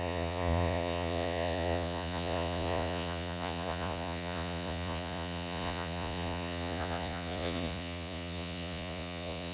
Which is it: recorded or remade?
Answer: remade